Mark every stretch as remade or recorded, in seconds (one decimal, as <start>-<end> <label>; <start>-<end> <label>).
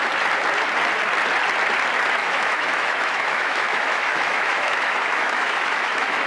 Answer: 0.0-2.2 recorded; 2.2-6.3 remade